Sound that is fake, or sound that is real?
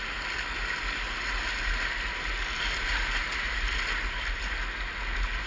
real